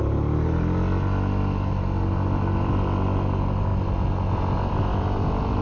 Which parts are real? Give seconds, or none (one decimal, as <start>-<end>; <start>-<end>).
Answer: 0.0-5.6